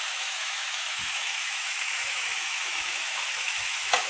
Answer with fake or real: fake